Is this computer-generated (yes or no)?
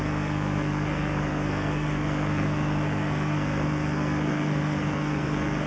yes